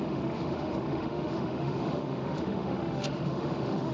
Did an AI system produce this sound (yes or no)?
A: yes